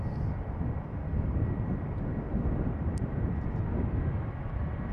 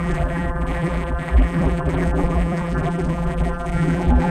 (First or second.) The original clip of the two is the first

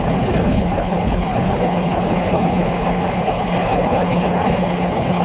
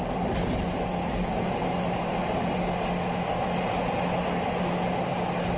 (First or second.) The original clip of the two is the second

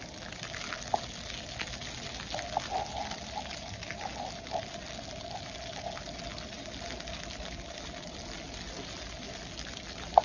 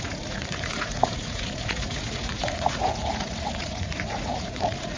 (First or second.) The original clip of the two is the first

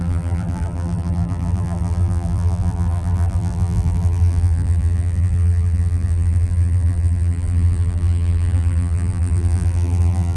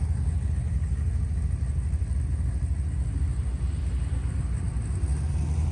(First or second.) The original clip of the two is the second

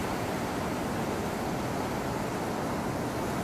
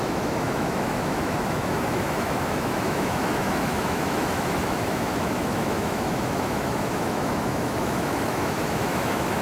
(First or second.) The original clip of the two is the first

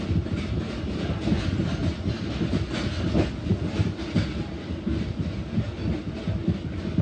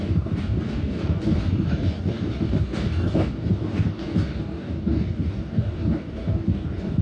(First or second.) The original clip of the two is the first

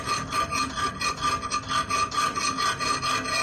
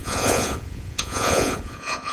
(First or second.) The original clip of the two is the first